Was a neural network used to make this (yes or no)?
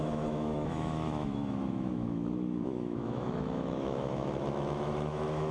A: yes